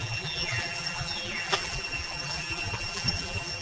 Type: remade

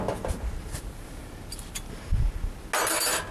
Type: recorded